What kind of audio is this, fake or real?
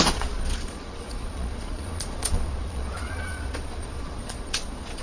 fake